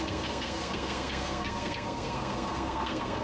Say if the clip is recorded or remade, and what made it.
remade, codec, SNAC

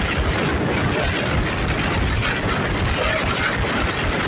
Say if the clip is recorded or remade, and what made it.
recorded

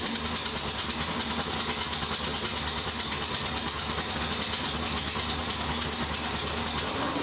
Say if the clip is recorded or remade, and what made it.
recorded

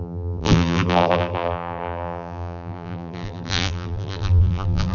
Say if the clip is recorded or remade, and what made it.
remade, vocoder, BigVGAN v2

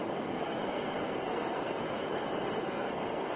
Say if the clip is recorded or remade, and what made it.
remade, codec, SNAC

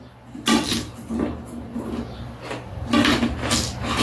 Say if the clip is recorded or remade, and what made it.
recorded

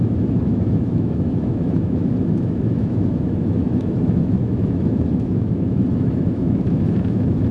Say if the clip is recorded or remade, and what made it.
remade, autoencoder, DAC-VAE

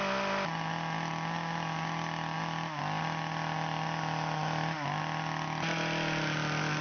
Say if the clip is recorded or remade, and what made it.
recorded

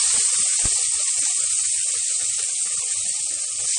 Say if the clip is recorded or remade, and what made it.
recorded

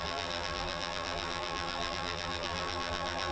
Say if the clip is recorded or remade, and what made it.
remade, vocoder, BigVGAN v2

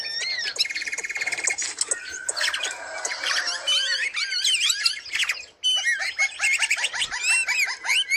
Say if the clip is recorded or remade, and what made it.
recorded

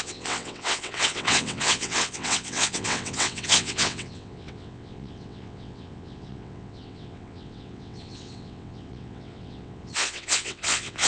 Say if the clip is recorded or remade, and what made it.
remade, vocoder, WaveNeXt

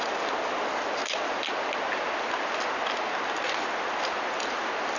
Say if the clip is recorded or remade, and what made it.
recorded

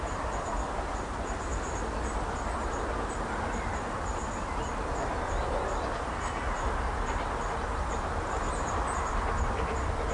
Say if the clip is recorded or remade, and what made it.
recorded